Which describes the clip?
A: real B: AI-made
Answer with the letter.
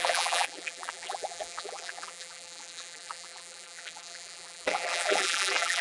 B